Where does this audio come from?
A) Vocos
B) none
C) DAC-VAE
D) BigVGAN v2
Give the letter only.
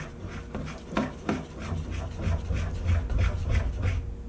B